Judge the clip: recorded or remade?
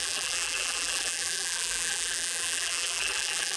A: remade